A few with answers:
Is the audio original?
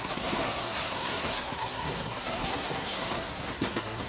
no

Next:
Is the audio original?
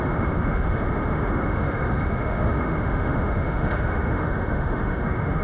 no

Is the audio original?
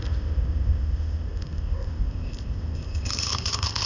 no